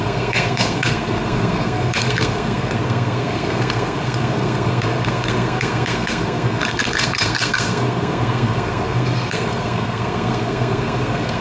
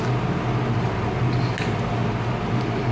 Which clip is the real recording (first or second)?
second